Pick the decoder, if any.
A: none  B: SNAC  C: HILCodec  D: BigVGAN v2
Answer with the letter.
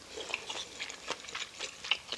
A